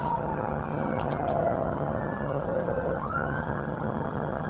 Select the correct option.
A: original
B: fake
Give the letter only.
B